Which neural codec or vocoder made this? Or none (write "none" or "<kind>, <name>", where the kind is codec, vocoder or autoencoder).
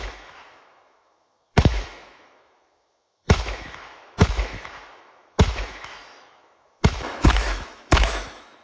autoencoder, DAC-VAE